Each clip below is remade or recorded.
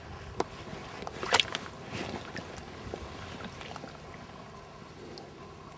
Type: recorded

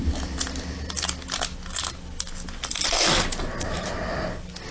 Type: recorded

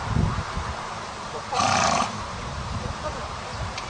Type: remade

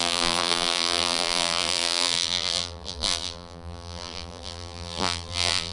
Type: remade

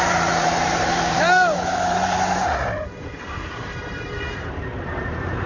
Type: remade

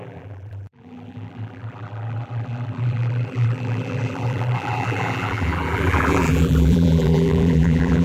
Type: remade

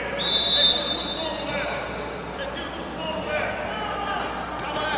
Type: remade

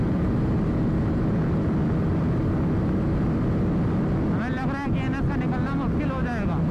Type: recorded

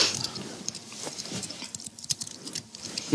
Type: remade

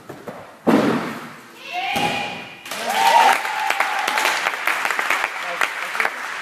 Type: recorded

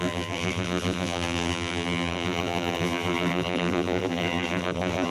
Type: remade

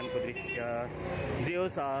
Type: recorded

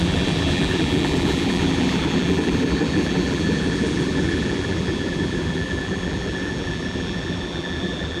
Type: remade